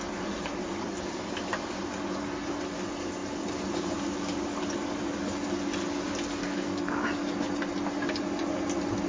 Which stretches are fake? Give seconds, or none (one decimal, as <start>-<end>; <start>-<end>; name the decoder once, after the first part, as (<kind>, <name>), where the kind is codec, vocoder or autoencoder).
6.4-7.0 (codec, SNAC)